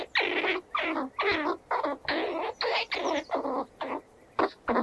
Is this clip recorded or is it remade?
recorded